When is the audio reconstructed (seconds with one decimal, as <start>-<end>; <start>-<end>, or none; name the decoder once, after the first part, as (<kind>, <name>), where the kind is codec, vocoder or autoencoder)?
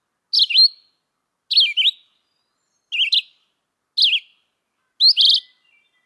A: none